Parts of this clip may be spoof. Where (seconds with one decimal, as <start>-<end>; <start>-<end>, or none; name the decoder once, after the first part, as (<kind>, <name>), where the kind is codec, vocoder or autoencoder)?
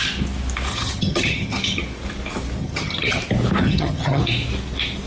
0.7-1.8 (vocoder, HiFi-GAN); 2.6-3.2; 3.6-4.2